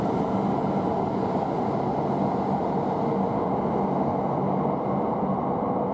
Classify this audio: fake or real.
real